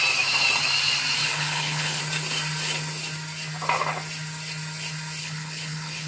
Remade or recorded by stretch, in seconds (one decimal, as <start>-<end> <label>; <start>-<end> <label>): 0.0-1.2 recorded; 1.2-2.0 remade; 2.0-5.2 recorded; 5.2-6.1 remade